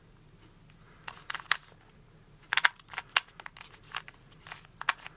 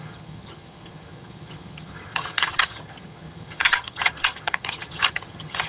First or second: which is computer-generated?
second